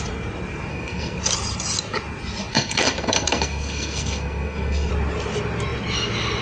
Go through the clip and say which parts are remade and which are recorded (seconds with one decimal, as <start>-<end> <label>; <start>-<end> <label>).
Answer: 0.0-0.7 recorded; 0.7-1.2 remade; 1.2-2.5 recorded; 2.5-4.9 remade; 4.9-6.4 recorded